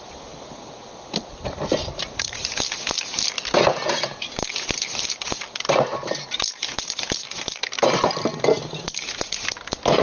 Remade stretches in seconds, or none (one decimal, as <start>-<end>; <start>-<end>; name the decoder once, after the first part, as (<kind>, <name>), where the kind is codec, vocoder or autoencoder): 1.3-2.4 (vocoder, BigVGAN v2); 6.0-8.2